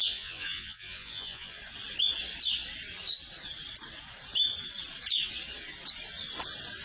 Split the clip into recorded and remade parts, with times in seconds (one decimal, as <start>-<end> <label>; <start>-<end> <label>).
0.0-1.6 remade; 1.6-6.8 recorded